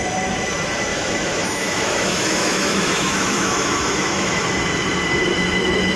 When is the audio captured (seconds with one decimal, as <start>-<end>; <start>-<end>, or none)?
0.0-0.9; 4.5-6.0